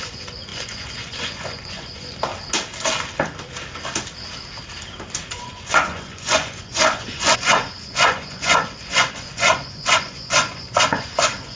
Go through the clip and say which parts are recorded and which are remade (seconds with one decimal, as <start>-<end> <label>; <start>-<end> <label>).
0.0-2.3 remade; 2.3-5.3 recorded; 5.3-11.6 remade